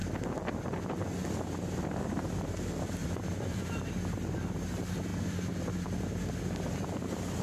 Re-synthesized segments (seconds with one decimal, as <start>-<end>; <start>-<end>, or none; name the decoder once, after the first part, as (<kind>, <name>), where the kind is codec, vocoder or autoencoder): 3.0-3.6 (vocoder, BigVGAN v2); 5.1-6.3